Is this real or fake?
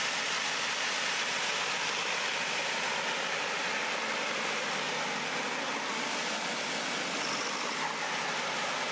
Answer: real